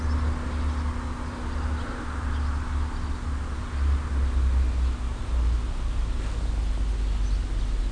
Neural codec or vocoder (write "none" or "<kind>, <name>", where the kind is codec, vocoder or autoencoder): none